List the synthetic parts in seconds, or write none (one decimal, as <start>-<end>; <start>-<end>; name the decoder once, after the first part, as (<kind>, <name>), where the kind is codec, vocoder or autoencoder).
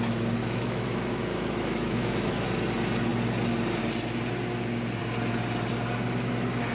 0.4-2.3 (autoencoder, DAC-VAE)